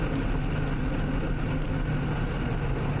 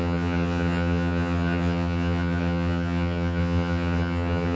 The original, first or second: first